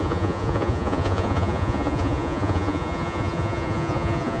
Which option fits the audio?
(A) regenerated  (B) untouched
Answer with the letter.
A